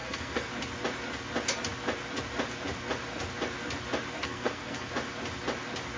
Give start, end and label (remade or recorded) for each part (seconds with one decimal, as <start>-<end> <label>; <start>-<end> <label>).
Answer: 0.0-0.5 remade; 0.5-4.2 recorded; 4.2-4.9 remade; 4.9-6.0 recorded

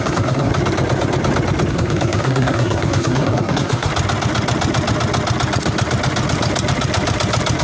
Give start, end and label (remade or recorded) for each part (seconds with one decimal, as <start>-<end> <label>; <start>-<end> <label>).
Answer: 0.0-0.5 remade; 0.5-1.7 recorded; 1.7-3.9 remade; 3.9-7.6 recorded